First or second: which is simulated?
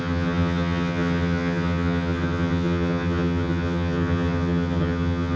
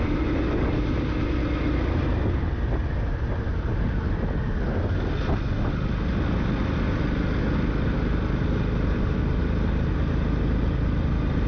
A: first